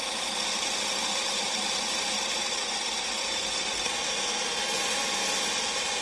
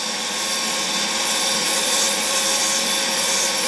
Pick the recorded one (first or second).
second